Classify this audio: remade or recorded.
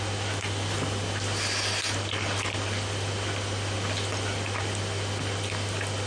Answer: recorded